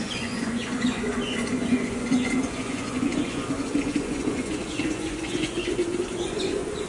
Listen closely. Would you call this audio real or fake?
fake